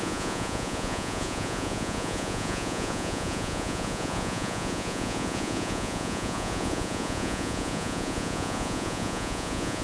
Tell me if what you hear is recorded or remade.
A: remade